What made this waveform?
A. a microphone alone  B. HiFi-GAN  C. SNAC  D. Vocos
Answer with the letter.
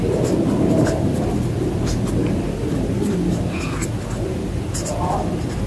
A